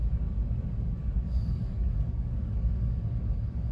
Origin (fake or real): fake